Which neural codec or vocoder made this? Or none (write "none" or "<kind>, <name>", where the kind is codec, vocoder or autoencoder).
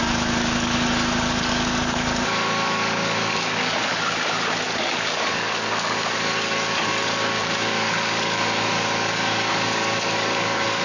codec, DAC